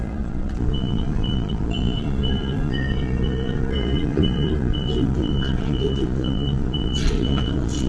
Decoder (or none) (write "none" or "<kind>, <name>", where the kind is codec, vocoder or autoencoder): vocoder, Vocos